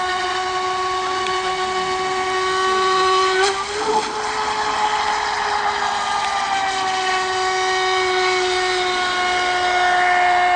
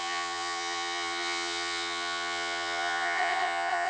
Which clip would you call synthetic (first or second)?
second